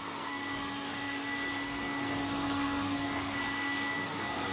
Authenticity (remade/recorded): remade